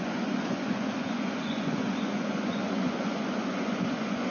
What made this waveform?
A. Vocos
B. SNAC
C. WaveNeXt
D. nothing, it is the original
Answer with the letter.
A